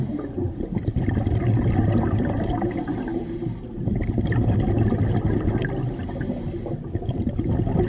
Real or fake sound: real